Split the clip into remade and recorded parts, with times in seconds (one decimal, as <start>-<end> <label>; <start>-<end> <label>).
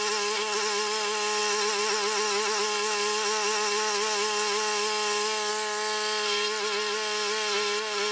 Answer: 0.0-8.1 recorded